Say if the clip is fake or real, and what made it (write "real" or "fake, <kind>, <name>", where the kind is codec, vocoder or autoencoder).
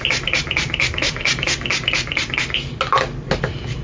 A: real